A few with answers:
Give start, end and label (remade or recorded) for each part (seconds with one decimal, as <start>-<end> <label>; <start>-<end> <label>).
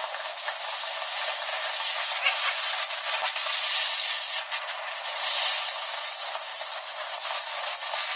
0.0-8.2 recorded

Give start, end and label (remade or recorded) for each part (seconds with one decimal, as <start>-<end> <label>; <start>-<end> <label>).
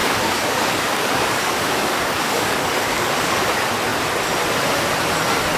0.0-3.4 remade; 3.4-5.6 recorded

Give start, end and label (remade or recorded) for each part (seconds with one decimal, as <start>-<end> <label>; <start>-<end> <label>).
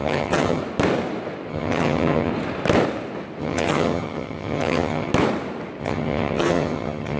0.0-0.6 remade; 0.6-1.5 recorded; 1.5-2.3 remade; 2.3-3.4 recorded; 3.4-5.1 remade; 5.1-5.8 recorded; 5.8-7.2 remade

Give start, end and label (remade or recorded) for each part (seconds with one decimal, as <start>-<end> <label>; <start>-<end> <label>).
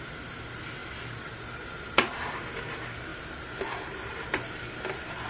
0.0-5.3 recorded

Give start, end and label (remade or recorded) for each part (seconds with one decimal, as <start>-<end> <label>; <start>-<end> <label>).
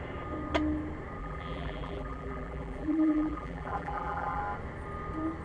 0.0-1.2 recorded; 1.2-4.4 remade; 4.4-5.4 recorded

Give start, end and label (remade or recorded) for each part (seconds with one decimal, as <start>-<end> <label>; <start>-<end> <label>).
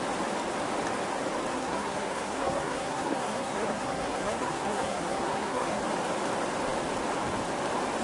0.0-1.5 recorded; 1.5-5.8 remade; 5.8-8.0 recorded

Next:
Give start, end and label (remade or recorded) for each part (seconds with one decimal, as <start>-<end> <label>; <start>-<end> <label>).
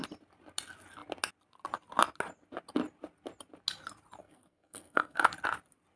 0.0-4.2 recorded; 4.2-5.3 remade; 5.3-6.0 recorded